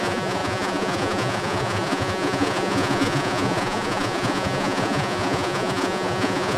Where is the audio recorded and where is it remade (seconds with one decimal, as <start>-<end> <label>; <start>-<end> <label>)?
0.0-6.6 remade